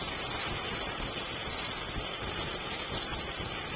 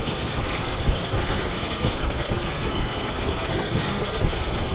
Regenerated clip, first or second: second